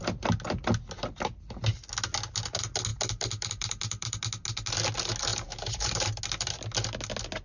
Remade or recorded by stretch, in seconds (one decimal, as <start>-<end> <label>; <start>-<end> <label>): 0.0-2.9 recorded; 2.9-4.2 remade; 4.2-5.3 recorded; 5.3-6.2 remade; 6.2-7.4 recorded